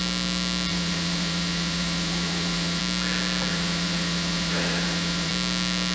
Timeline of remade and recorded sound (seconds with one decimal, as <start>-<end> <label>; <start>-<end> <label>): 0.0-0.7 recorded; 0.7-2.8 remade; 2.8-3.5 recorded; 3.5-5.3 remade; 5.3-5.9 recorded